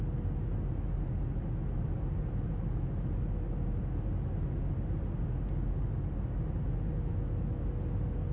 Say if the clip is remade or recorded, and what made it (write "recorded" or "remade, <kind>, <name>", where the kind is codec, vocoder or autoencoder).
recorded